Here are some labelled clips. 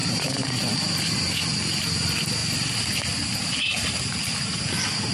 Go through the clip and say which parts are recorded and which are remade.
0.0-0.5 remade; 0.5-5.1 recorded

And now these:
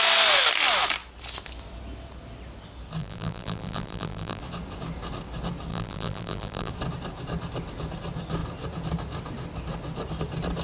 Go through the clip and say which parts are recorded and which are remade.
0.0-3.0 recorded; 3.0-4.4 remade; 4.4-5.7 recorded; 5.7-6.7 remade; 6.7-10.6 recorded

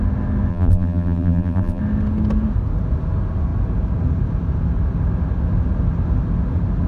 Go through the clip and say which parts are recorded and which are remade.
0.0-0.5 recorded; 0.5-1.8 remade; 1.8-6.9 recorded

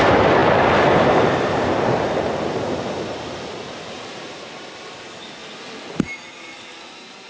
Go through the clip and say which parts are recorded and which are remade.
0.0-5.4 remade; 5.4-6.7 recorded; 6.7-7.3 remade

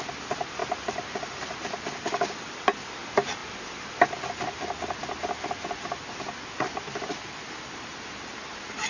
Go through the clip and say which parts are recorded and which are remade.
0.0-0.6 recorded; 0.6-2.5 remade; 2.5-8.9 recorded

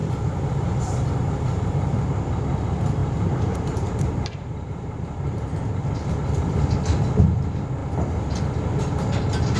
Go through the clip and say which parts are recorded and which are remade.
0.0-3.0 recorded; 3.0-5.8 remade; 5.8-9.6 recorded